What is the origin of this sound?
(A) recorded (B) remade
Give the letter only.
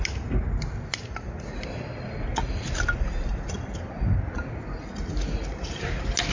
A